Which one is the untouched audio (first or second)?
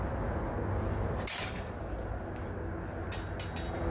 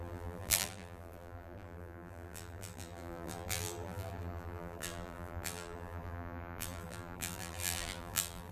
first